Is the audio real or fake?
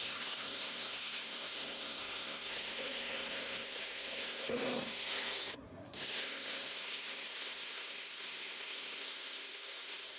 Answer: fake